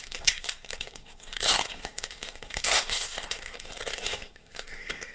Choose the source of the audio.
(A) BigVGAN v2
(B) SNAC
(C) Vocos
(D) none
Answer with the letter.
B